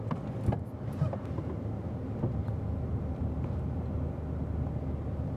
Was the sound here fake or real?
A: real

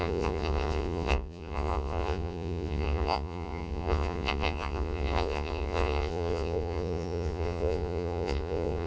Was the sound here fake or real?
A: fake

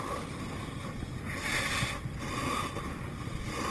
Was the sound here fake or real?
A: real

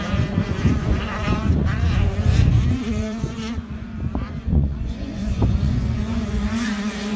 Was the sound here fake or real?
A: fake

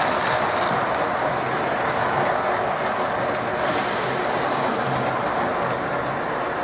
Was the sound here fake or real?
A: real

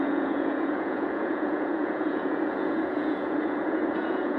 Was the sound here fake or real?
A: fake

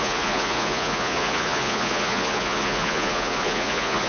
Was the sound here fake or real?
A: fake